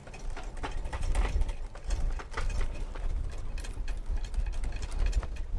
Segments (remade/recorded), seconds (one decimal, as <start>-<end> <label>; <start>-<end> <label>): 0.0-3.4 remade; 3.4-5.6 recorded